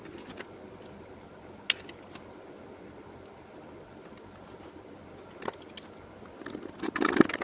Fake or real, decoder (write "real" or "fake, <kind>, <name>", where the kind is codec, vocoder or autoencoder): real